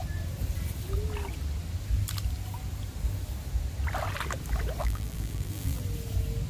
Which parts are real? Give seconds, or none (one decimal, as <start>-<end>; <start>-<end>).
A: 0.0-4.8; 5.8-6.5